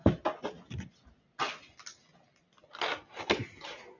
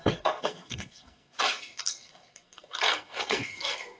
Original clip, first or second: first